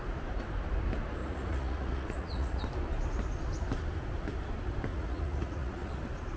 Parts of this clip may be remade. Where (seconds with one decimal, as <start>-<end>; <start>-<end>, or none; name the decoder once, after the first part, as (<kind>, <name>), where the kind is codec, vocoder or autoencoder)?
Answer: 1.2-2.6 (vocoder, Vocos); 4.9-5.9